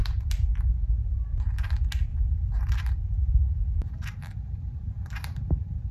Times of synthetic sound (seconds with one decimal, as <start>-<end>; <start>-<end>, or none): 0.0-0.5; 2.1-5.9

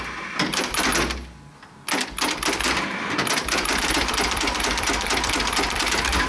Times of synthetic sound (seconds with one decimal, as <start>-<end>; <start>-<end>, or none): 0.0-0.9; 3.2-6.3

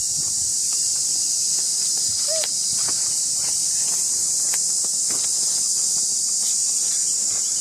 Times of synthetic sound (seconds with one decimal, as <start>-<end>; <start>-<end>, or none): 0.5-1.2; 2.9-3.5; 4.2-5.0

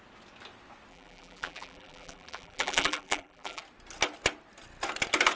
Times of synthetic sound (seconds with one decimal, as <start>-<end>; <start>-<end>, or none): 0.9-3.6

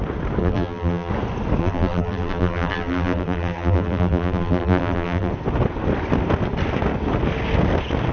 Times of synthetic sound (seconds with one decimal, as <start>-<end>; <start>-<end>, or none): 0.4-1.1; 1.6-5.3

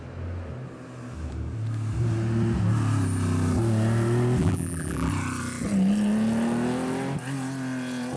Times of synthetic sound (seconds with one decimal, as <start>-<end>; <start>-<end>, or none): 4.4-5.1